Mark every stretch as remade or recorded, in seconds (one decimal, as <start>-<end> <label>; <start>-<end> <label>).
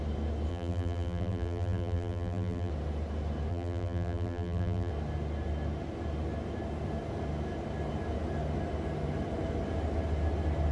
0.0-0.5 recorded; 0.5-2.7 remade; 2.7-3.5 recorded; 3.5-4.9 remade; 4.9-10.7 recorded